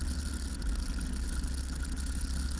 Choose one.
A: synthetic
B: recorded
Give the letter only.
B